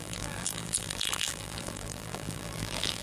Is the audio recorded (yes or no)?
no